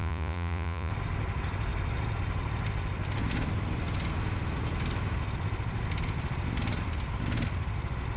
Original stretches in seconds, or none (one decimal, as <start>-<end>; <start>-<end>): 0.9-8.2